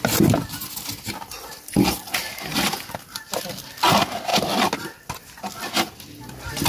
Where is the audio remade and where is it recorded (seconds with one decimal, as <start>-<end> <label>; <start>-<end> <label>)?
0.0-6.7 recorded